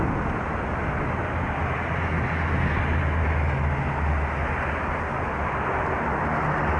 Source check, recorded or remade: recorded